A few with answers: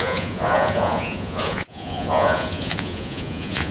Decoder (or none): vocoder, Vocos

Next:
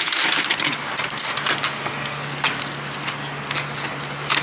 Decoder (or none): none